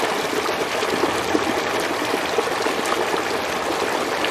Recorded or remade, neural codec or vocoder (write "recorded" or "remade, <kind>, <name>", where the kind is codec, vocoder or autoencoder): recorded